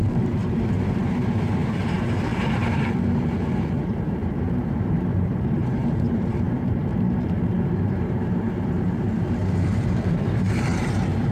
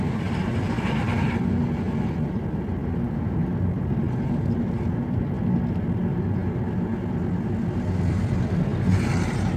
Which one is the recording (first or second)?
second